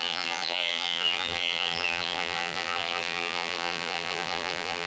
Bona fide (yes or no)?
no